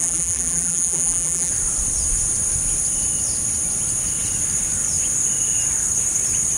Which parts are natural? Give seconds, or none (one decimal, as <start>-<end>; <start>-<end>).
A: 1.5-6.6